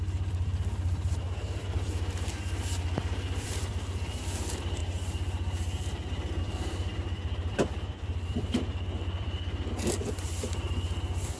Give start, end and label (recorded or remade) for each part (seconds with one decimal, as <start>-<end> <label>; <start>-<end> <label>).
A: 0.0-4.8 remade; 4.8-6.4 recorded; 6.4-11.4 remade